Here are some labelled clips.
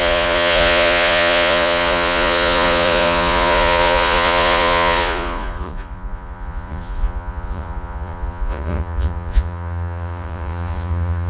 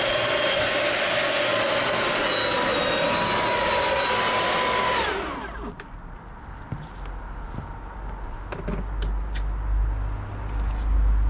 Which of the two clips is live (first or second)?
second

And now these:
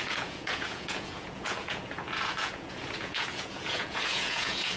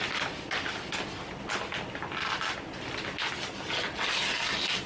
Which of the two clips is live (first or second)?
second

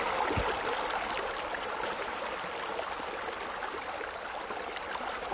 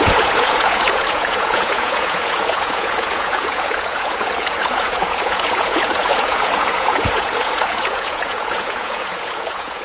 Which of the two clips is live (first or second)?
first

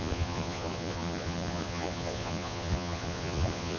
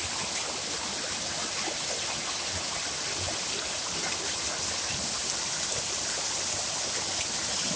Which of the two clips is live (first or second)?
second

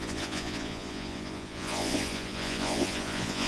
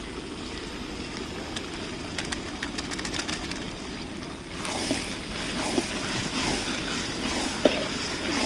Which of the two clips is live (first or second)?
second